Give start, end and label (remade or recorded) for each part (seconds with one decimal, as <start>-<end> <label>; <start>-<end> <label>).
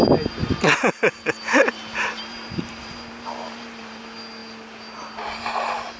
0.0-0.4 recorded; 0.4-4.0 remade; 4.0-6.0 recorded